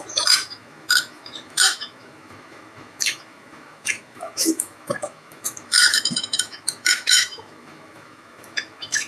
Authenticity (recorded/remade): remade